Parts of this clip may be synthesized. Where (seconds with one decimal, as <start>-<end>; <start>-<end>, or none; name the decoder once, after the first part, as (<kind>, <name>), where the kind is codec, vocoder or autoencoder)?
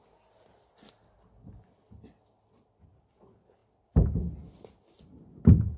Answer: none